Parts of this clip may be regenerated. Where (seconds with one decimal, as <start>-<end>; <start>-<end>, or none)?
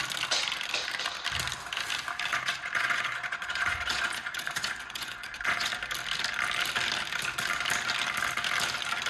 2.3-5.7